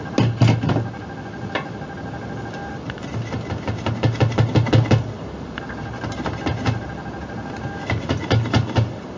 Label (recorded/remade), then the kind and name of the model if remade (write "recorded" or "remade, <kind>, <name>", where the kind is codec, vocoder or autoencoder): recorded